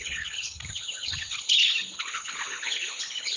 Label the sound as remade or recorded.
remade